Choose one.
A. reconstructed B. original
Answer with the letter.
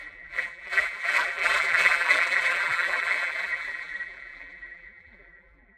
A